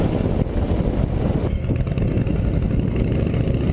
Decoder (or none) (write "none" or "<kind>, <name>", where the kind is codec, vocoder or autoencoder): none